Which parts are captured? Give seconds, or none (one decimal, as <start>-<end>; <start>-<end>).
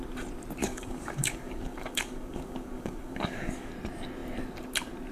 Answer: 0.0-0.6; 3.7-5.1